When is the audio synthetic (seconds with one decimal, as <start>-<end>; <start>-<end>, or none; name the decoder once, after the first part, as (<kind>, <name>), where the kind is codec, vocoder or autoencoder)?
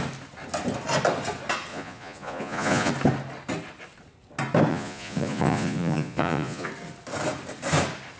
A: 1.7-2.9 (vocoder, Vocos); 4.7-6.7